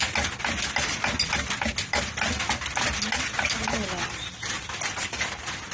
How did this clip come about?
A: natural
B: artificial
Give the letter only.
A